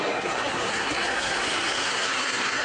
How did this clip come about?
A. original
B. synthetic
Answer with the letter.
B